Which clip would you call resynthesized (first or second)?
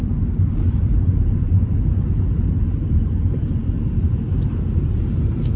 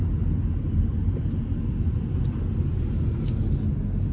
first